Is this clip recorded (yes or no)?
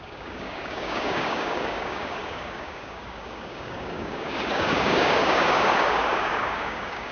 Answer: no